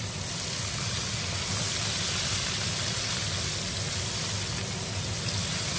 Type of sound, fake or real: real